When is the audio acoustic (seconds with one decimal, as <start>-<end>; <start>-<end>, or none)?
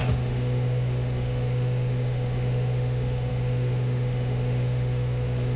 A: none